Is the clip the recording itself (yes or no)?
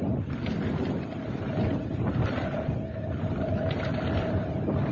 yes